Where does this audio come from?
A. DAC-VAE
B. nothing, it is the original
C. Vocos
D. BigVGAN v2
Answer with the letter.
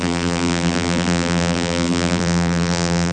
D